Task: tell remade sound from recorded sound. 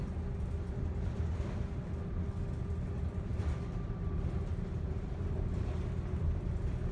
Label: recorded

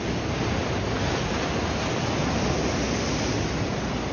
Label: recorded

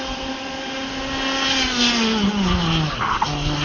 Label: recorded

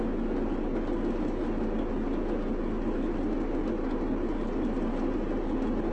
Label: recorded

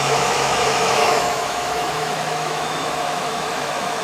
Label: remade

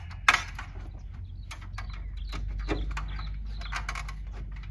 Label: recorded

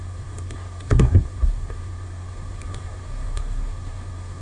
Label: remade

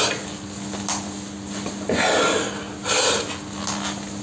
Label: recorded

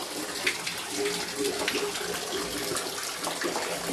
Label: recorded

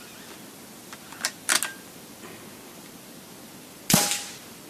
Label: recorded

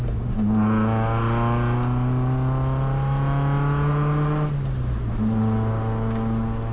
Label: recorded